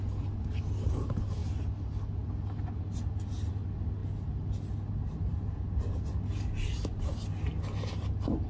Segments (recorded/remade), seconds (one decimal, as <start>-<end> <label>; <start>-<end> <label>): 0.0-8.5 recorded